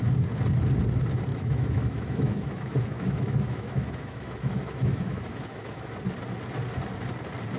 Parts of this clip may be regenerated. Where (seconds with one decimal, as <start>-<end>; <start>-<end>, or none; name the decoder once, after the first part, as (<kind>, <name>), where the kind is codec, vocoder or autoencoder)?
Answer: 1.3-5.9 (autoencoder, DAC-VAE)